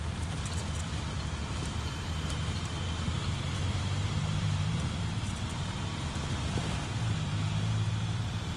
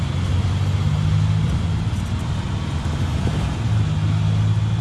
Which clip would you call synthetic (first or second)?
first